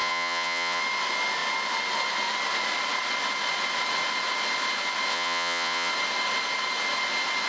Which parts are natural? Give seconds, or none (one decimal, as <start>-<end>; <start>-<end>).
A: 0.8-5.1; 5.9-7.5